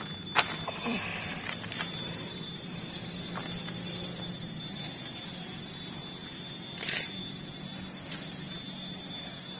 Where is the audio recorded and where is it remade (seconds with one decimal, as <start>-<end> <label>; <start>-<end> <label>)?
0.0-1.1 recorded; 1.1-4.3 remade; 4.3-6.2 recorded; 6.2-7.6 remade; 7.6-9.6 recorded